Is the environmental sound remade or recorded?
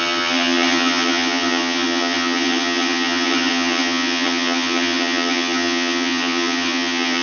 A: remade